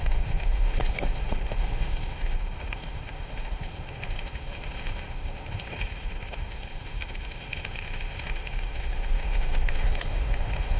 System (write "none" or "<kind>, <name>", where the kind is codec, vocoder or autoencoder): autoencoder, DAC-VAE